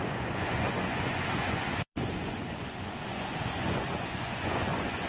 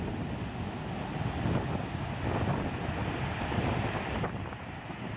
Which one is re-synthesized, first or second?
first